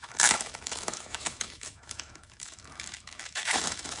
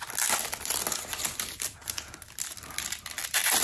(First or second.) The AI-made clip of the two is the first